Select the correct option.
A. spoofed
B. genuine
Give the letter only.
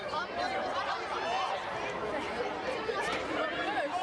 B